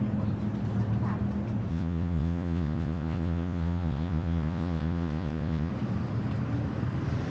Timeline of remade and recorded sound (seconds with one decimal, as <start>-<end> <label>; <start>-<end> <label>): 0.0-1.7 recorded; 1.7-5.7 remade; 5.7-7.3 recorded